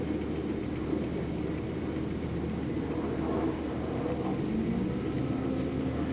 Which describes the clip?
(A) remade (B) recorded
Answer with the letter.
B